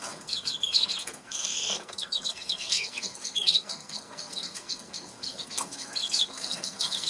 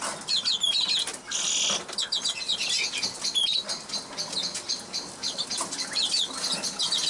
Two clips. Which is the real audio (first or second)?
second